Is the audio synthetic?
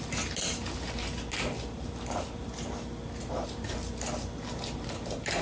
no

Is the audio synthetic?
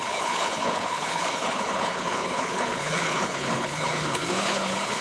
yes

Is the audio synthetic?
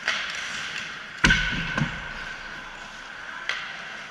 no